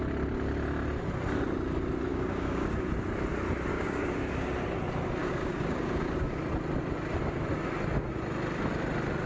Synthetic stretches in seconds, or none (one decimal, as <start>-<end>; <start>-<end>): 2.1-2.8; 3.7-4.3; 5.2-6.4